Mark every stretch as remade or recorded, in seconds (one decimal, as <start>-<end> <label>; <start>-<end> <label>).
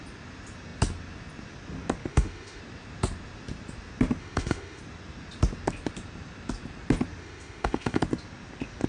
0.0-2.1 recorded; 2.1-2.6 remade; 2.6-4.2 recorded; 4.2-4.8 remade; 4.8-7.2 recorded; 7.2-8.0 remade; 8.0-8.9 recorded